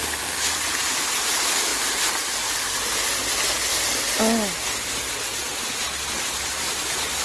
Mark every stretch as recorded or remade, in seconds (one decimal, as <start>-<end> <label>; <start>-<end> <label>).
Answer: 0.0-7.2 recorded